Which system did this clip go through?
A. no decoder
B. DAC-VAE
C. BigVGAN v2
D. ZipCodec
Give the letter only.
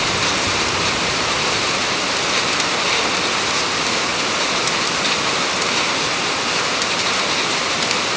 A